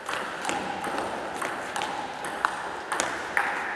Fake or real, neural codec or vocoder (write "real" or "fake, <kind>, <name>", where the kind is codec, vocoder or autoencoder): real